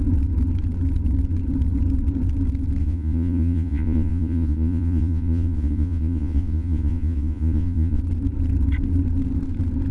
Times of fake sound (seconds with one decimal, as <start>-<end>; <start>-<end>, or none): 2.8-8.0